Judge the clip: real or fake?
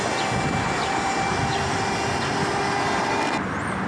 real